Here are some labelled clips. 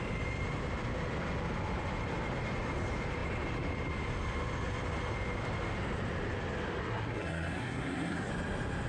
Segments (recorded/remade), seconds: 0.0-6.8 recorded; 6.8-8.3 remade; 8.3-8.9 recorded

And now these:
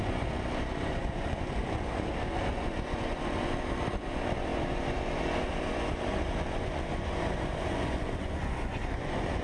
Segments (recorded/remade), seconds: 0.0-9.4 remade

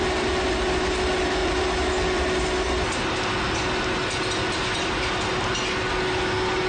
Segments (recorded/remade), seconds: 0.0-6.7 recorded

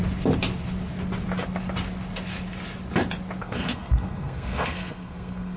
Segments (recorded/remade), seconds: 0.0-3.4 recorded; 3.4-5.6 remade

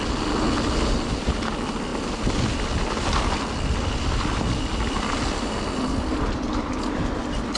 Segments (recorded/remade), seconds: 0.0-7.6 recorded

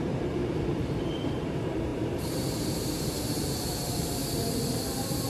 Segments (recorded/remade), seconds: 0.0-4.2 remade; 4.2-5.3 recorded

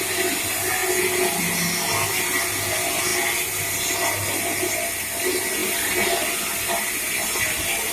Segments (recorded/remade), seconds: 0.0-7.9 recorded